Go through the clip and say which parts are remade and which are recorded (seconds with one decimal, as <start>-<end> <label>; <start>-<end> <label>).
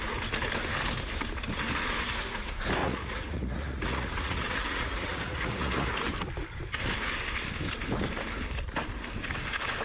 0.0-2.8 recorded; 2.8-5.9 remade; 5.9-9.8 recorded